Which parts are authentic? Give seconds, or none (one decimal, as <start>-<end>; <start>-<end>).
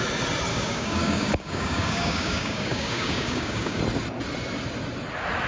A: 0.0-0.5; 3.8-5.5